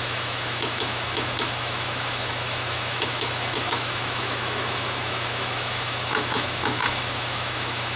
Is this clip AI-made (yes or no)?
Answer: yes